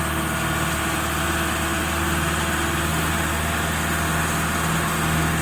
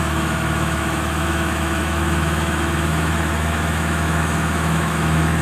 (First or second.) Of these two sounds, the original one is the first